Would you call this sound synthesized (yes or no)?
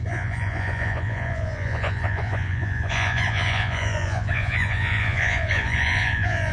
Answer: yes